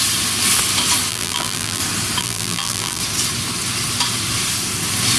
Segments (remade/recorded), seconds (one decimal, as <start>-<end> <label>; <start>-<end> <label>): 0.0-1.1 recorded; 1.1-1.8 remade; 1.8-2.2 recorded; 2.2-3.0 remade; 3.0-5.2 recorded